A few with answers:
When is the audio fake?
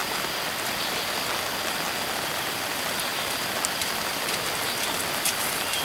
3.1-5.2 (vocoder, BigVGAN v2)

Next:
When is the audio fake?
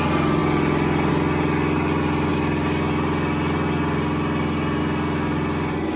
none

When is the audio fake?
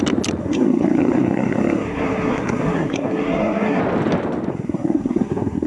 0.4-3.8 (codec, SNAC); 4.5-5.7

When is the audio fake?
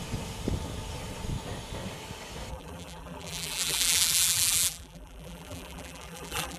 2.5-6.6 (vocoder, BigVGAN v2)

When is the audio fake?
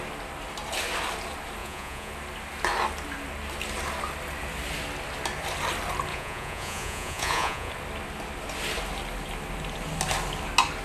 1.6-2.1 (vocoder, Vocos); 6.1-7.7